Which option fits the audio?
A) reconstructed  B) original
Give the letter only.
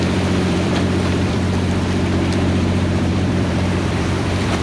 A